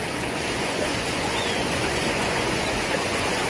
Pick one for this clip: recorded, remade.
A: remade